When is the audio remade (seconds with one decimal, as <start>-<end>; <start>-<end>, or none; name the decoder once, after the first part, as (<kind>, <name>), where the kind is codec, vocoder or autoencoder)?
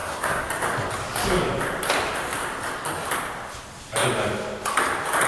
0.0-0.5 (codec, SNAC)